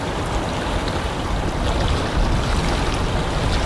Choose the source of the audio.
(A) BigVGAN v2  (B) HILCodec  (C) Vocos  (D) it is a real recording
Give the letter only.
D